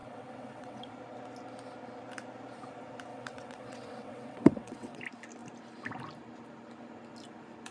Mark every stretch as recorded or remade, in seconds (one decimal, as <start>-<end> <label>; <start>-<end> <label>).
0.0-0.9 remade; 0.9-3.1 recorded; 3.1-5.0 remade; 5.0-7.7 recorded